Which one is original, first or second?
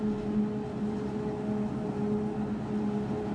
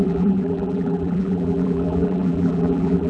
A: first